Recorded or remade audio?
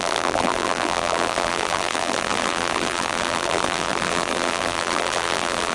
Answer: remade